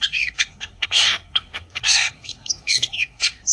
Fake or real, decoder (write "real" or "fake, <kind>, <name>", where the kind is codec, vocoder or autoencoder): fake, codec, SNAC